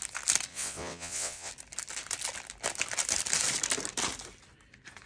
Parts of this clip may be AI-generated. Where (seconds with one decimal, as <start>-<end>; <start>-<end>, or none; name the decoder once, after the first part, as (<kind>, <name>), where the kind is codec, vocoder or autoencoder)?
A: 0.5-1.5 (vocoder, WaveNeXt)